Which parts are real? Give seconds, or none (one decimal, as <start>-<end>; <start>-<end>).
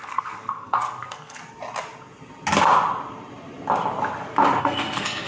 1.4-4.6